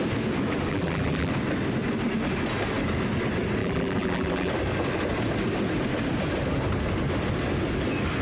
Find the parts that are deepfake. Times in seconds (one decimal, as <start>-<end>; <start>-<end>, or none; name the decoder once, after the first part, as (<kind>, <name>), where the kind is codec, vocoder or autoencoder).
0.7-1.3 (vocoder, BigVGAN v2); 3.6-4.5